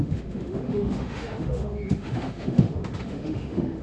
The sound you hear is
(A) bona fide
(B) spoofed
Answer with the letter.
B